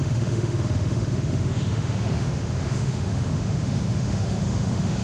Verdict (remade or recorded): remade